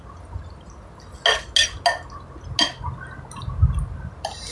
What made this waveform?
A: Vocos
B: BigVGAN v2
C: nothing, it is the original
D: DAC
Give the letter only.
C